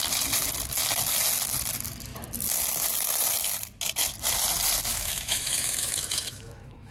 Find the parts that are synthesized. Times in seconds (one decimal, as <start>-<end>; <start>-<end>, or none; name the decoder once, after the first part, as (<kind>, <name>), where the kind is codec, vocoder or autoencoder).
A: 4.9-6.9 (autoencoder, DAC-VAE)